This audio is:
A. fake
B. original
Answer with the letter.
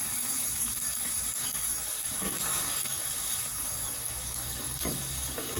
A